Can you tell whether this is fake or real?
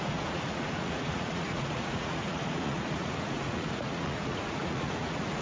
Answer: fake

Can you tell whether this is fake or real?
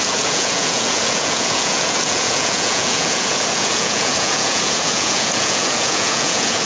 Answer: fake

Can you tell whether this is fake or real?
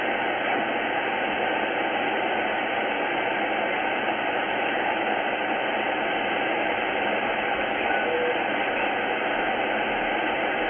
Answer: real